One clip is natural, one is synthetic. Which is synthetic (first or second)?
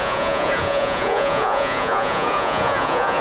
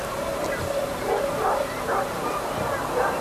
first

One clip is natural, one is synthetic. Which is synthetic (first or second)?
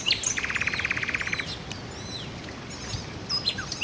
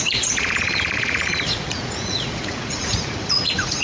second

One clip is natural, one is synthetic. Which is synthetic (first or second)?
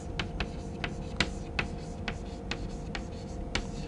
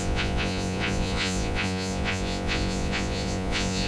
second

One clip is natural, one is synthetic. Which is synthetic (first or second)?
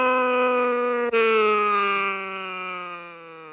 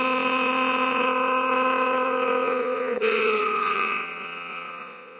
second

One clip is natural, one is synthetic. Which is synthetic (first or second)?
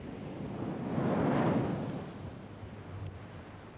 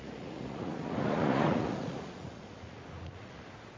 second